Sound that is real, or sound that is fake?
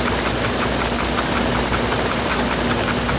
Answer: real